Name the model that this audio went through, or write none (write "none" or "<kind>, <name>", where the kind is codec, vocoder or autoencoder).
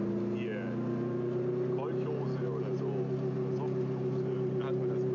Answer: none